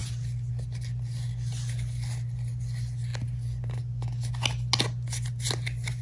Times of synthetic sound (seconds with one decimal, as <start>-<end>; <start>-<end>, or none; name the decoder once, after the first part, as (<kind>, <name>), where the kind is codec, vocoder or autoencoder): none